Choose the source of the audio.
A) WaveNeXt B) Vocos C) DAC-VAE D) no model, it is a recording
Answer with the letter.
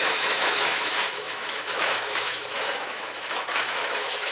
C